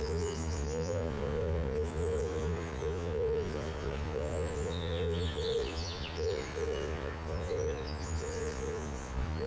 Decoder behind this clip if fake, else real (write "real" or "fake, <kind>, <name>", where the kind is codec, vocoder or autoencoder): fake, vocoder, Vocos